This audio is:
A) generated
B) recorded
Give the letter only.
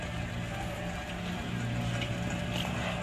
B